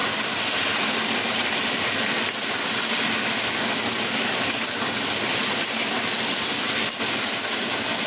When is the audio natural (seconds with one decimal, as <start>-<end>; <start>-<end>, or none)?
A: 0.0-8.1